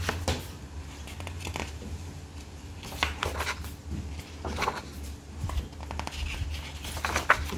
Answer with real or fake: real